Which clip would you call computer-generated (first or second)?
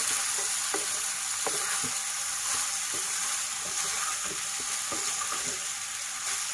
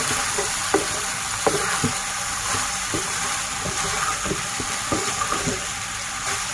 second